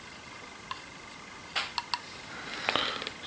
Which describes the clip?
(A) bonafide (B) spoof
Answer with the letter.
A